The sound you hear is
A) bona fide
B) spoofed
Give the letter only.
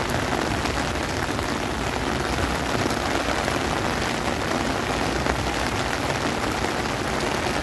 A